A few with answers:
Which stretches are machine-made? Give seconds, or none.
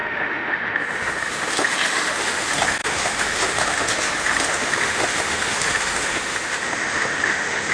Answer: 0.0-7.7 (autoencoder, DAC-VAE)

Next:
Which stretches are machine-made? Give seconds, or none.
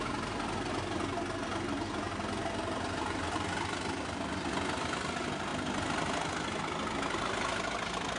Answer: none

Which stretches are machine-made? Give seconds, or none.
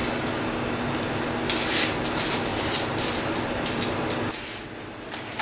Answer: 2.5-3.8 (vocoder, BigVGAN v2)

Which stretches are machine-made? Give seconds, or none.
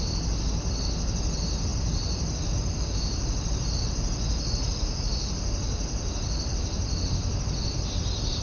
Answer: none